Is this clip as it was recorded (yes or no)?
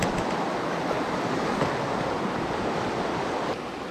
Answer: yes